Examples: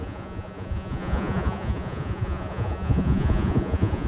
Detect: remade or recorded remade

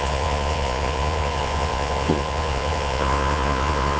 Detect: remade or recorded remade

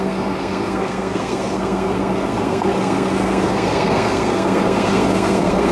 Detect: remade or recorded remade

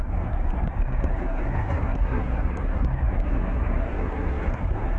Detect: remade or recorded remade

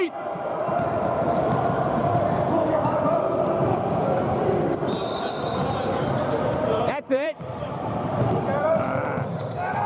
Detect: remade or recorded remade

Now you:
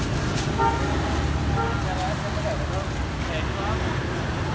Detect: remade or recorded recorded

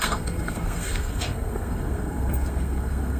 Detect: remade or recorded remade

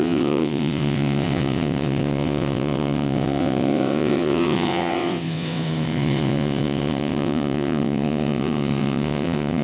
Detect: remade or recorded remade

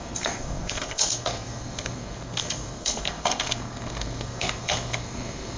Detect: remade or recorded remade